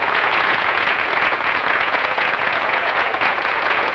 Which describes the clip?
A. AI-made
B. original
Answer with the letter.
A